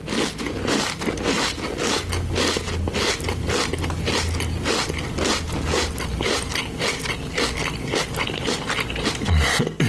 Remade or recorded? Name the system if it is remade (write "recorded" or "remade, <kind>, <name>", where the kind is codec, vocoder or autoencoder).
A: recorded